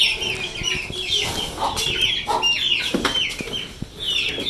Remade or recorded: recorded